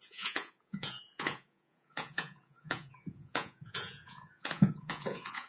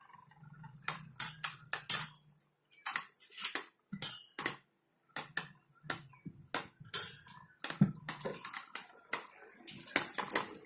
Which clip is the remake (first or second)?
first